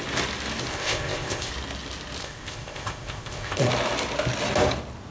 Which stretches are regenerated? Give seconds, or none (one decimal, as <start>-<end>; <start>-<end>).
0.7-1.5; 2.2-3.7